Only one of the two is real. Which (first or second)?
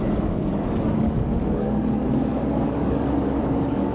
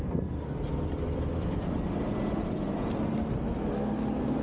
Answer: second